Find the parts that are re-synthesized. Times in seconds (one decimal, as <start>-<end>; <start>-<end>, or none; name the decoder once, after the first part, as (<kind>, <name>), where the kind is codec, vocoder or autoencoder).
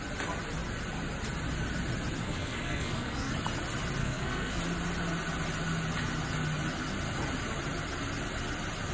2.2-3.3 (codec, SNAC); 4.0-4.6